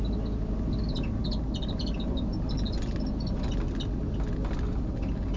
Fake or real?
real